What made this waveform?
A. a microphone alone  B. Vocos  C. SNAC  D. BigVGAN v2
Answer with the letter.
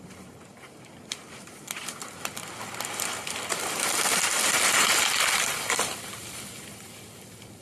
A